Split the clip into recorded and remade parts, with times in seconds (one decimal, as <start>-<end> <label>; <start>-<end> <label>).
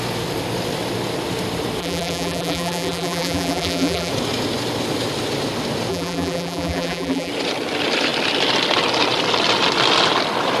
0.0-1.8 recorded; 1.8-4.1 remade; 4.1-5.9 recorded; 5.9-7.3 remade; 7.3-10.6 recorded